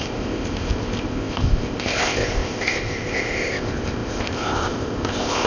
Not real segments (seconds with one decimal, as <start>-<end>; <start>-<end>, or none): 0.0-5.5